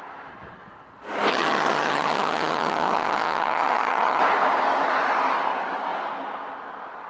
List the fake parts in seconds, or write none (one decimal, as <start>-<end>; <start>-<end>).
1.3-4.2